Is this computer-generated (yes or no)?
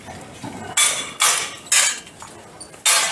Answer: no